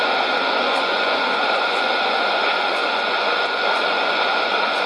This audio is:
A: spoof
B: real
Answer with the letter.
A